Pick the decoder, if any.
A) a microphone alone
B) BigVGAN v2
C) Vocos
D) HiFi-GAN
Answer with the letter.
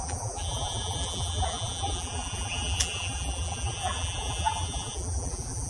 B